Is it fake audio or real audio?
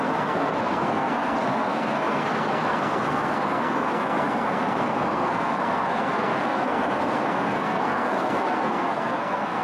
fake